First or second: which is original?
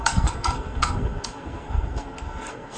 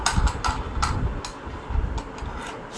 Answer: second